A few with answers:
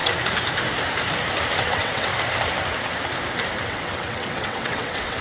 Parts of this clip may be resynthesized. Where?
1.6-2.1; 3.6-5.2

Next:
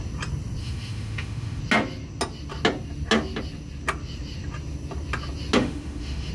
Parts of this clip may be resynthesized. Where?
0.6-1.6; 5.6-6.3

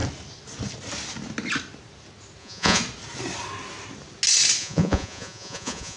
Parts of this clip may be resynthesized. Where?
2.4-2.8; 4.6-6.0

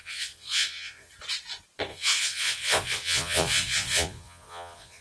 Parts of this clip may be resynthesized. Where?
0.0-1.1; 1.9-5.0